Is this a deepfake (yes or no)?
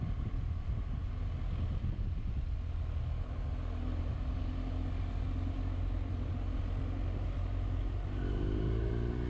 no